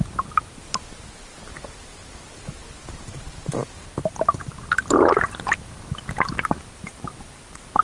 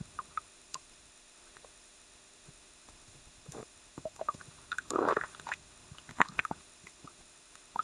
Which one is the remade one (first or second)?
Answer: second